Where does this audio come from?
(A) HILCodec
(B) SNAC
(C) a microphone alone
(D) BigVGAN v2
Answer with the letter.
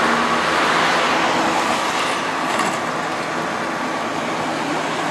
C